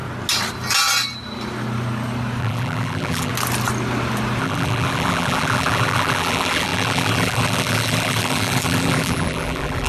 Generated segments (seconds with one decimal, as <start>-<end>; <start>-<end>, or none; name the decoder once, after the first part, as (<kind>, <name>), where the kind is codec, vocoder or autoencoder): 2.4-3.3 (vocoder, BigVGAN v2); 4.4-9.9